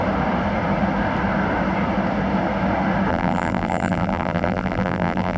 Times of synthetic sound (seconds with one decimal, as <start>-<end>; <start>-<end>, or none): 3.1-5.4